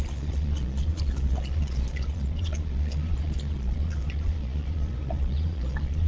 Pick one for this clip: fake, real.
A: fake